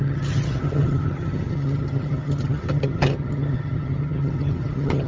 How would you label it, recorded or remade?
remade